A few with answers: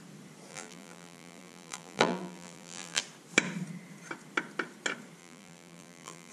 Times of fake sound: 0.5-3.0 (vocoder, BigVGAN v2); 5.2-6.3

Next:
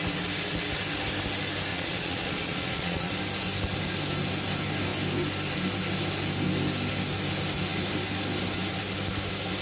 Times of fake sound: 1.7-3.1 (vocoder, Vocos)

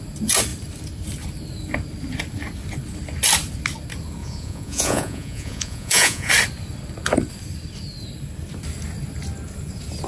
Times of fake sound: 4.2-6.3 (vocoder, Vocos)